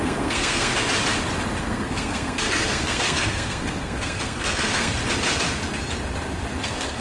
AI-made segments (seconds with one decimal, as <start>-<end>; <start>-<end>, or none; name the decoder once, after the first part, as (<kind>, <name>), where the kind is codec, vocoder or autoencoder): 0.0-0.7 (codec, SNAC); 1.6-4.9; 6.6-7.0